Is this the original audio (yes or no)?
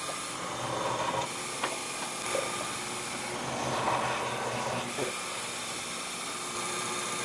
yes